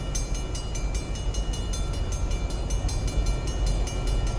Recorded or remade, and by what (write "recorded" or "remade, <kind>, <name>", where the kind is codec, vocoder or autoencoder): recorded